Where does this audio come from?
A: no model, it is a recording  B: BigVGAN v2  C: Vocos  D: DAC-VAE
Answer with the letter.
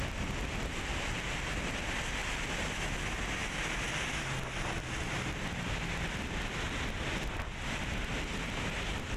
A